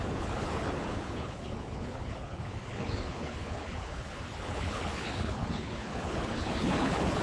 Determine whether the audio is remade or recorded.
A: remade